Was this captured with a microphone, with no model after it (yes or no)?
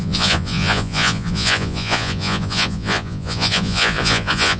no